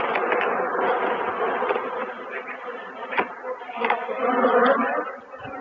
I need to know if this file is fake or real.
real